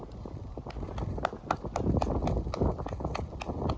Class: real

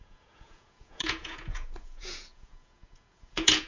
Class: fake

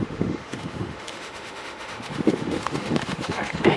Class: fake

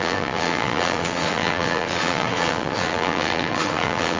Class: fake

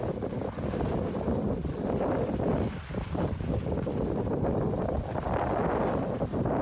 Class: real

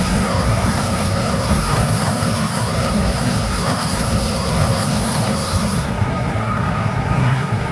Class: fake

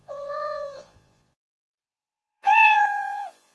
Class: fake